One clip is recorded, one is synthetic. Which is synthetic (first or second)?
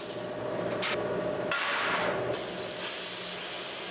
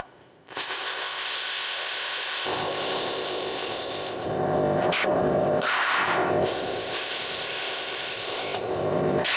second